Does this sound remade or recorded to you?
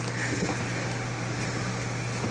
recorded